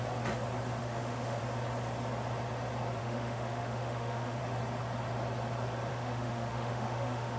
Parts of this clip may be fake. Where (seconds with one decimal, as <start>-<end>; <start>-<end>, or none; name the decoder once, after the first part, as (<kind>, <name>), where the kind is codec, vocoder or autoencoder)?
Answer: 0.8-1.4 (autoencoder, DAC-VAE); 3.0-4.4; 5.9-7.4